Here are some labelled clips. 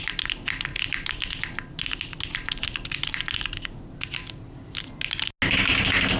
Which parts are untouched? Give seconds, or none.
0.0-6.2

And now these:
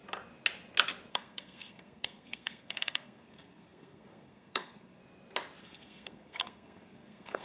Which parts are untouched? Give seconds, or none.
0.0-1.1; 5.0-5.6